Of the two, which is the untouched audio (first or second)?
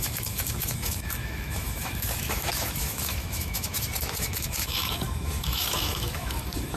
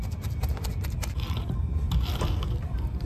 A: second